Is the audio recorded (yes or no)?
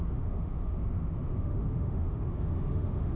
no